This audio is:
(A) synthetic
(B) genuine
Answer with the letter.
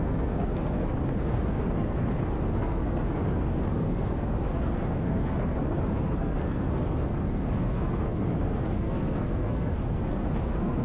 A